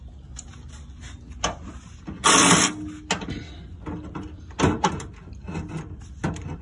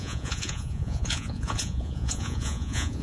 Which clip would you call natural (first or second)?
first